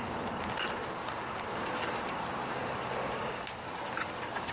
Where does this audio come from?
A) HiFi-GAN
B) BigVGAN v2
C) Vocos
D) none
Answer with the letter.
D